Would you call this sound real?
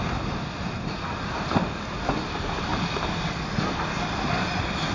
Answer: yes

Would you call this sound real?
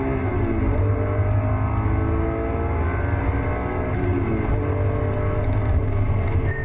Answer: yes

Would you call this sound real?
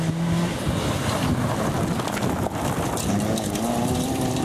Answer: yes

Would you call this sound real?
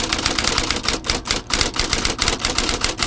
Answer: yes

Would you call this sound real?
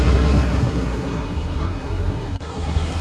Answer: no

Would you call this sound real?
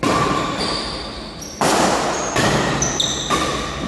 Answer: yes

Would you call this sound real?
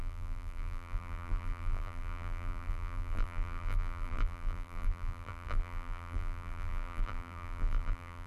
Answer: no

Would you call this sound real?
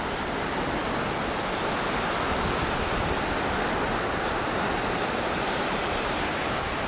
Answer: yes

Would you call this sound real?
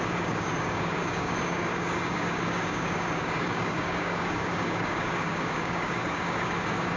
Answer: no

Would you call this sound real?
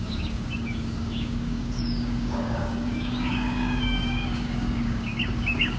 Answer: no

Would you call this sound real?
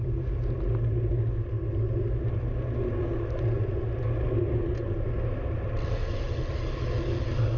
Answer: yes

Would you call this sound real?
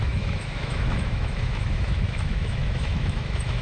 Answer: no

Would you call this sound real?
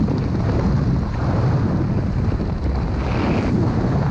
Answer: yes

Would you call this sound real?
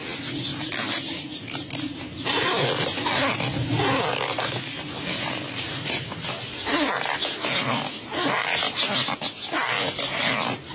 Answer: yes